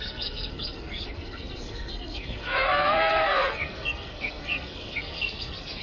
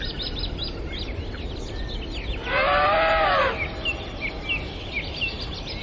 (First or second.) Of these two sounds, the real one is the second